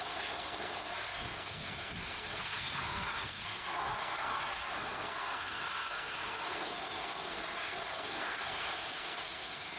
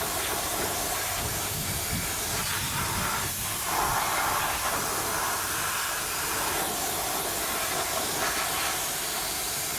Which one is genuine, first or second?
second